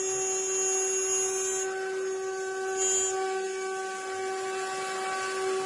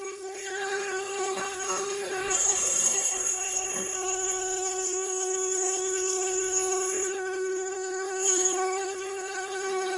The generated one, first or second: second